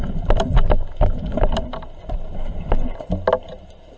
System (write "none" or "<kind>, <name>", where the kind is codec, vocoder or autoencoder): none